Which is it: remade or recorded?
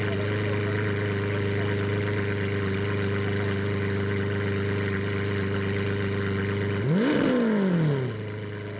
recorded